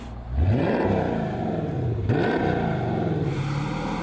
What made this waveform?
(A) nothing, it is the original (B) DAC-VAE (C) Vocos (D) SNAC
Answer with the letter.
A